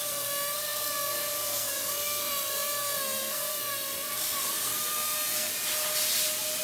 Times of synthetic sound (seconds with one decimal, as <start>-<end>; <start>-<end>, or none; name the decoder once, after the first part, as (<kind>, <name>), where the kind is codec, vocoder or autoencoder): 0.0-5.5 (codec, SNAC)